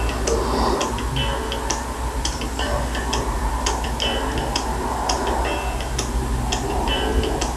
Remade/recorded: recorded